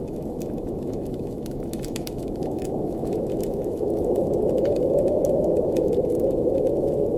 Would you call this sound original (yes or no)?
no